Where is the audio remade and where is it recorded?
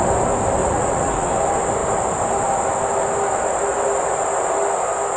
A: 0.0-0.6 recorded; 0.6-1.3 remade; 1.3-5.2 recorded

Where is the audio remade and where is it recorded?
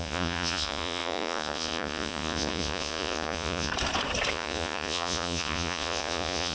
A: 0.0-3.7 remade; 3.7-4.3 recorded; 4.3-6.5 remade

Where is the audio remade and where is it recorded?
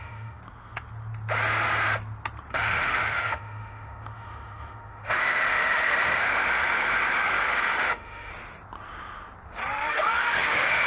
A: 0.0-0.4 remade; 0.4-2.5 recorded; 2.5-8.3 remade; 8.3-9.9 recorded; 9.9-10.9 remade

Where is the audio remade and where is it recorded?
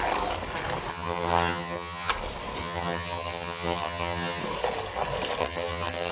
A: 0.0-0.9 recorded; 0.9-2.1 remade; 2.1-2.6 recorded; 2.6-4.4 remade; 4.4-5.4 recorded; 5.4-6.1 remade